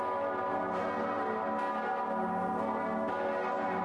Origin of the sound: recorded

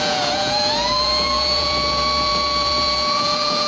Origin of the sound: remade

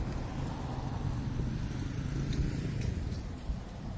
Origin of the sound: recorded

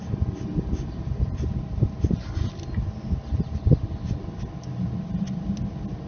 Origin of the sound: recorded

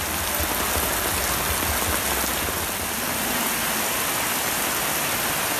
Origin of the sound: recorded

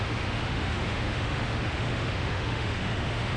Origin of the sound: remade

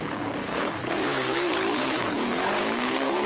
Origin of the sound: remade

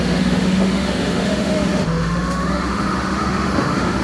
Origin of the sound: remade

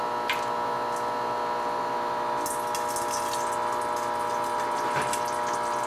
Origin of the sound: recorded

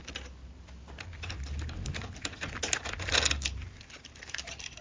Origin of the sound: recorded